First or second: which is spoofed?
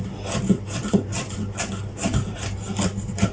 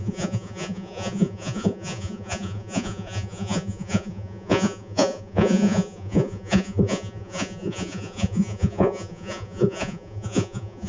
second